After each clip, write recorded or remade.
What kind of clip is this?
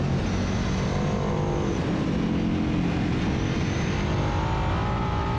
recorded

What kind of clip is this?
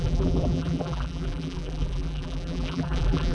remade